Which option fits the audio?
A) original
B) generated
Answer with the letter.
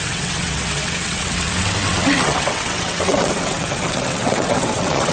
B